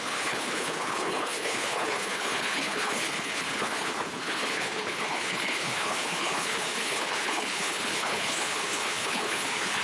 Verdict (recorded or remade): remade